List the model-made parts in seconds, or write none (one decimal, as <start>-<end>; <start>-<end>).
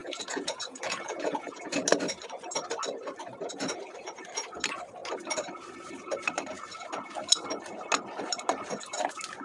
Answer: 0.0-1.8